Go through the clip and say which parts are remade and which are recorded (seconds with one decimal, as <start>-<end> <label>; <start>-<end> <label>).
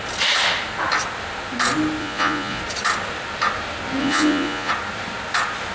0.0-2.0 recorded; 2.0-2.6 remade; 2.6-4.0 recorded; 4.0-4.7 remade; 4.7-5.7 recorded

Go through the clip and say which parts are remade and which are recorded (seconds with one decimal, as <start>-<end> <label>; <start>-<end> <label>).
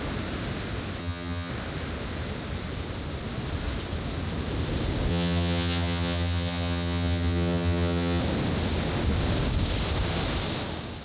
0.0-1.0 recorded; 1.0-1.5 remade; 1.5-5.1 recorded; 5.1-8.2 remade; 8.2-11.0 recorded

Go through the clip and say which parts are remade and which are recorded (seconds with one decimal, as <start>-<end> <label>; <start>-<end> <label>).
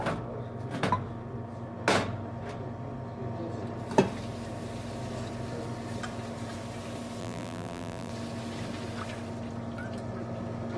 0.0-7.2 recorded; 7.2-8.1 remade; 8.1-10.8 recorded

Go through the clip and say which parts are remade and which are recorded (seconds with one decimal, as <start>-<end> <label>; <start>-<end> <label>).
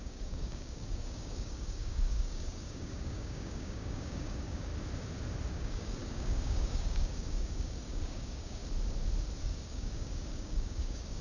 0.0-4.7 remade; 4.7-5.5 recorded; 5.5-8.6 remade; 8.6-9.4 recorded; 9.4-11.2 remade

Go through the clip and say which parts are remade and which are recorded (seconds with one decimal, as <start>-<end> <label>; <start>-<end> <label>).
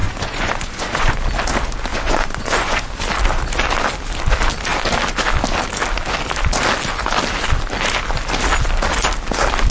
0.0-1.2 remade; 1.2-1.9 recorded; 1.9-2.9 remade; 2.9-9.7 recorded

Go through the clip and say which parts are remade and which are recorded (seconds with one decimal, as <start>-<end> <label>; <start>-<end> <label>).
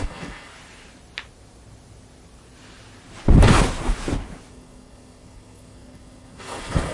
0.0-0.5 remade; 0.5-4.5 recorded; 4.5-6.9 remade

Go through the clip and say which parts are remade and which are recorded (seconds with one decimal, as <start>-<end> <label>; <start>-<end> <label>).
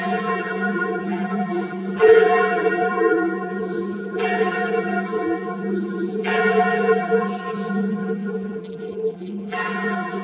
0.0-10.2 remade